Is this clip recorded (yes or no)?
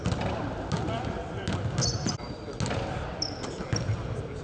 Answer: yes